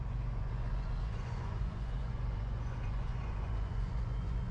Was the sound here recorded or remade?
remade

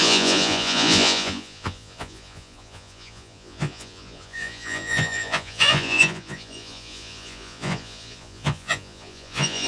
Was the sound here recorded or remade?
remade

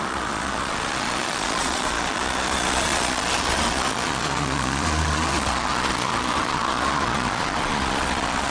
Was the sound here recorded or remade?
remade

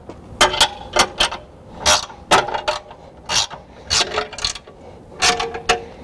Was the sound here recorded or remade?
recorded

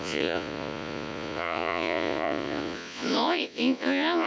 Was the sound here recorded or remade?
remade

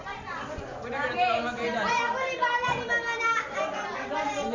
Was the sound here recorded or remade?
recorded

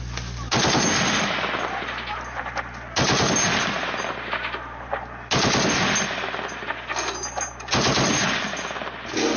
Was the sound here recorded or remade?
recorded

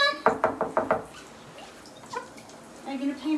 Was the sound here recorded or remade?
recorded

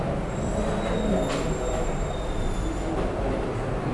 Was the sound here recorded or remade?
recorded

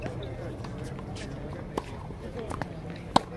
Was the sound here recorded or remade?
recorded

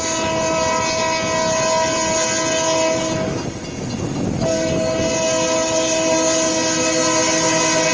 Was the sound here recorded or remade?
recorded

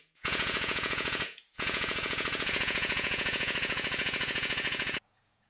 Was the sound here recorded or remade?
remade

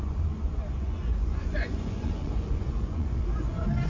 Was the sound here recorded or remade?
remade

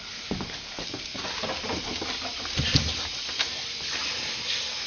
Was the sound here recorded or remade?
recorded